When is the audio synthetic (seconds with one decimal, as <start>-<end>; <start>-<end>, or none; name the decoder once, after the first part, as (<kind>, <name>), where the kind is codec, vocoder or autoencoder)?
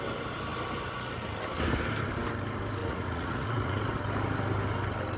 2.8-3.8 (vocoder, Vocos)